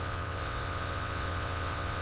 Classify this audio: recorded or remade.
remade